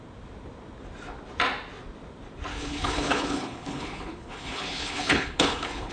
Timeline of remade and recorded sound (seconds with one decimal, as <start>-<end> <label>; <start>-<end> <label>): 0.0-2.5 recorded; 2.5-5.9 remade

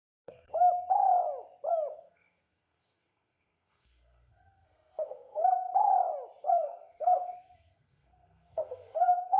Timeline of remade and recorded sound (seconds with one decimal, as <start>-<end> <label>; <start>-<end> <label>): 0.0-0.5 remade; 0.5-1.9 recorded; 1.9-5.7 remade; 5.7-6.4 recorded; 6.4-9.4 remade

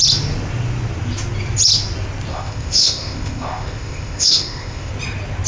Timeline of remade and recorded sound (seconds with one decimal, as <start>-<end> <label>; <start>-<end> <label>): 0.0-2.3 recorded; 2.3-4.9 remade; 4.9-5.5 recorded

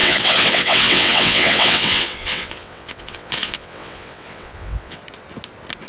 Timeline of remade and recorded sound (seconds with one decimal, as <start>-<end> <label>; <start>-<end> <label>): 0.0-5.0 remade; 5.0-5.9 recorded

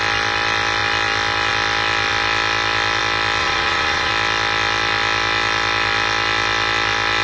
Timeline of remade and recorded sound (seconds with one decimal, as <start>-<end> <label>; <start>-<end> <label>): 0.0-3.4 recorded; 3.4-4.1 remade; 4.1-7.2 recorded

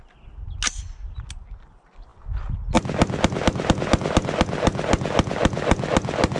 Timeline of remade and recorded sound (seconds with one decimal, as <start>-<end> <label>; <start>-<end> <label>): 0.0-6.4 recorded

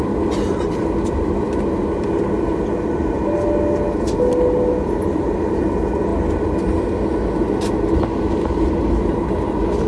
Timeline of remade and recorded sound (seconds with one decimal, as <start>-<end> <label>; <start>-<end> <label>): 0.0-9.9 recorded